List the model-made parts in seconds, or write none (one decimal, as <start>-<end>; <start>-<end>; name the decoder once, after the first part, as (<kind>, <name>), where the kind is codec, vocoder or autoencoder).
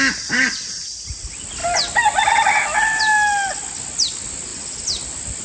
none